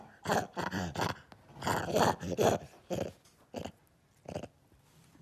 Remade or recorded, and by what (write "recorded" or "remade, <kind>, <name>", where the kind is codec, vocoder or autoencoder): recorded